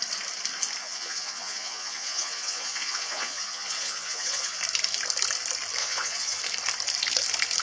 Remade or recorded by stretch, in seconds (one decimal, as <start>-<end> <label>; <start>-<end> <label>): 0.0-0.8 recorded; 0.8-4.6 remade; 4.6-5.8 recorded; 5.8-6.4 remade; 6.4-7.6 recorded